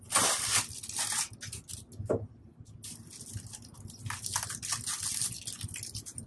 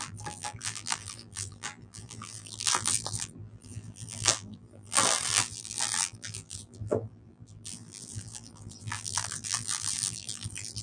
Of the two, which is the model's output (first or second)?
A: second